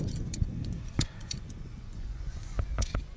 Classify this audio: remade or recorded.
remade